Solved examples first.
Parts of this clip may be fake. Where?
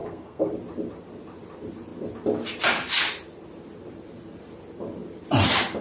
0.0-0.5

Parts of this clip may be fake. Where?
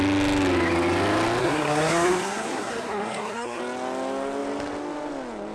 1.4-3.6